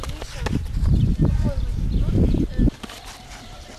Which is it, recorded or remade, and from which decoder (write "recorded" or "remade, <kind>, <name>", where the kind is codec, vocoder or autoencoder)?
recorded